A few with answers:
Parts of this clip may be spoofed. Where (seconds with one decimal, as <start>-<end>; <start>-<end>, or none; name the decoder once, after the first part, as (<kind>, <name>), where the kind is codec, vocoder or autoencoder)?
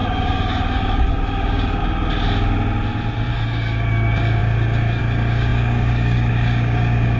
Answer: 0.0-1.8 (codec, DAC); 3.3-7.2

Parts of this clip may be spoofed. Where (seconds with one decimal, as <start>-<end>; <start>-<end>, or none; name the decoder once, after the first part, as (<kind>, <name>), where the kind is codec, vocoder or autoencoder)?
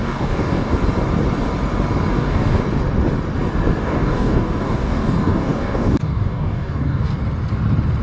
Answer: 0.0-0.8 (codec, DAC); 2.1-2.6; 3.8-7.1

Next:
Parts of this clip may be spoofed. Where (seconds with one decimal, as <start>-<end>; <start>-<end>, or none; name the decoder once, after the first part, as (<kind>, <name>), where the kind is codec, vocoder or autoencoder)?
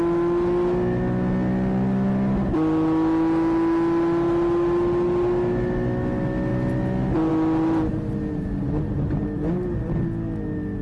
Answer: none